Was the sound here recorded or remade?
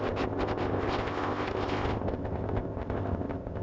remade